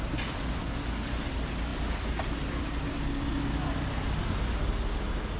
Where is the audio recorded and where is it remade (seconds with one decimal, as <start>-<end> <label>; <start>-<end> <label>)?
0.0-1.7 recorded; 1.7-2.6 remade; 2.6-5.4 recorded